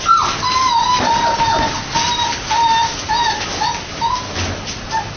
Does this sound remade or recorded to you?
recorded